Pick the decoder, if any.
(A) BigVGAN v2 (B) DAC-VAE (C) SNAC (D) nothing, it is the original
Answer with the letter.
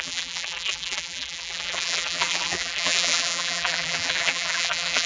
A